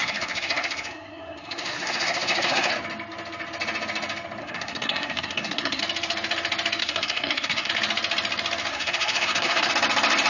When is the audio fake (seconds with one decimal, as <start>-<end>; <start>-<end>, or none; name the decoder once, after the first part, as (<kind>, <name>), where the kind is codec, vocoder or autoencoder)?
0.0-2.7 (codec, SNAC); 4.4-5.8; 6.8-7.7; 8.7-9.7